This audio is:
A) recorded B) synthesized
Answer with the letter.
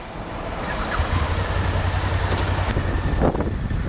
A